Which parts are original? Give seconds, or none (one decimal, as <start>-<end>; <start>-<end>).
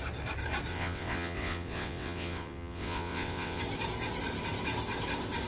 0.0-0.7; 3.6-5.5